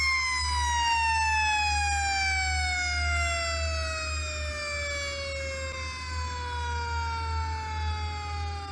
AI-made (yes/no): no